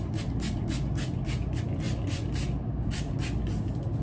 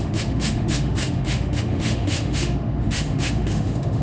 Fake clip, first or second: second